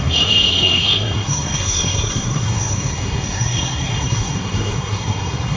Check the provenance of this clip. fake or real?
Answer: fake